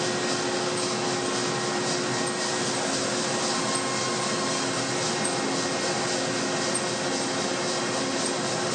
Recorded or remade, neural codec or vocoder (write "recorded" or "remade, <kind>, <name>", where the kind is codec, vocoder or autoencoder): recorded